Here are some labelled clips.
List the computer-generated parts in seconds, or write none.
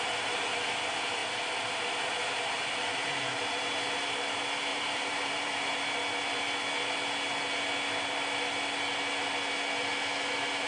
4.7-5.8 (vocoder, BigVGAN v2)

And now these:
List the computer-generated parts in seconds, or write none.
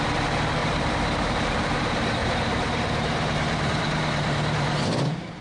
0.6-1.5 (vocoder, BigVGAN v2); 2.2-5.4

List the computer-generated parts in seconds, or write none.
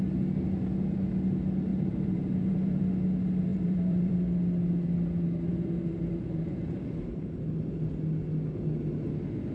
1.7-2.8 (vocoder, BigVGAN v2); 3.5-4.1; 5.5-7.9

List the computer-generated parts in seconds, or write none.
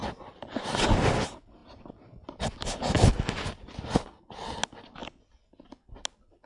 none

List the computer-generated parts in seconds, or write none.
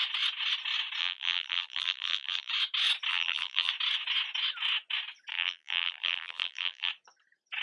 1.0-2.5 (vocoder, BigVGAN v2); 3.1-3.7; 5.3-6.9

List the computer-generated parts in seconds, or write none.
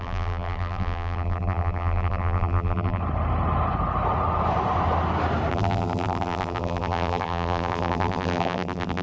0.0-3.0 (vocoder, BigVGAN v2); 5.5-9.0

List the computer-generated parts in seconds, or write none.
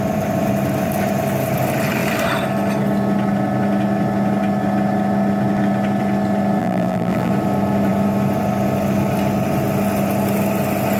6.6-7.3 (vocoder, BigVGAN v2)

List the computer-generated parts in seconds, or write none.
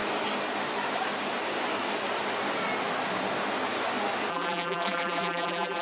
4.3-5.8 (vocoder, BigVGAN v2)